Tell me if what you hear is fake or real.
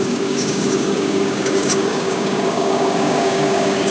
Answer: fake